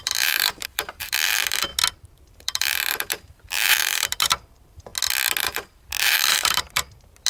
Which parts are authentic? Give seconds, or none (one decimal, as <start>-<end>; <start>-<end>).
1.7-2.3; 4.9-5.4